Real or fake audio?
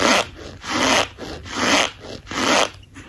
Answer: real